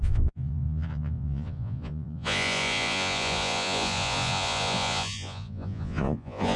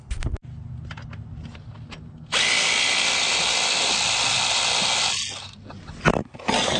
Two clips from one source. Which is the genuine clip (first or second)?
second